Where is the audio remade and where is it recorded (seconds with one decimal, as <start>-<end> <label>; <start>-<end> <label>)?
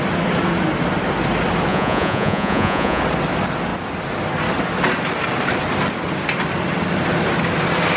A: 0.0-1.7 recorded; 1.7-3.0 remade; 3.0-8.0 recorded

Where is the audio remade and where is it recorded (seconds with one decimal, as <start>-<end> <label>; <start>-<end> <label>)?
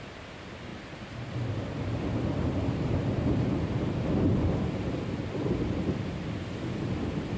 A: 0.0-7.4 recorded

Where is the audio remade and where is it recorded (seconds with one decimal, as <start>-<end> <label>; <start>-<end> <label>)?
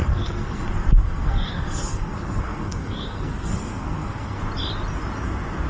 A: 0.0-0.6 remade; 0.6-1.0 recorded; 1.0-4.4 remade; 4.4-5.7 recorded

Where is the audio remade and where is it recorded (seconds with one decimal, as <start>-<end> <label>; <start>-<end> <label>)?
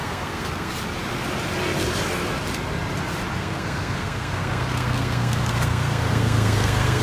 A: 0.0-0.7 remade; 0.7-3.4 recorded; 3.4-7.0 remade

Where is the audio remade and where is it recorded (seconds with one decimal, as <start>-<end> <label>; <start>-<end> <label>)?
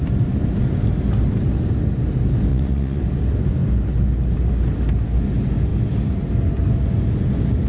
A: 0.0-2.5 recorded; 2.5-3.0 remade; 3.0-7.7 recorded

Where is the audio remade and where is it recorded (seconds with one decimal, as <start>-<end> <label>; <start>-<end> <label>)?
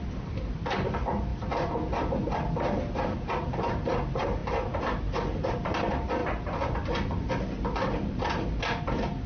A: 0.0-9.3 recorded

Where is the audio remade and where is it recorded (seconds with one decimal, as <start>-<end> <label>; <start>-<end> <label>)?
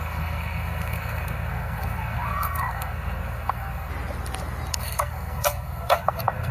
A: 0.0-3.9 remade; 3.9-4.7 recorded; 4.7-6.5 remade